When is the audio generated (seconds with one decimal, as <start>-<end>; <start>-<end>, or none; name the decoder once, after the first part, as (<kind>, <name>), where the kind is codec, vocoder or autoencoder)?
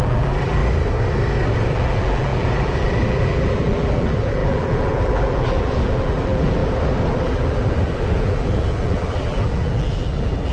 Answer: 0.0-0.6 (vocoder, BigVGAN v2); 1.7-6.6; 7.1-10.5